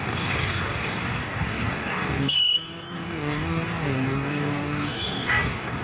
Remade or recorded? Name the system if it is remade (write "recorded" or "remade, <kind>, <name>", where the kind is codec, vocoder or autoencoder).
remade, codec, DAC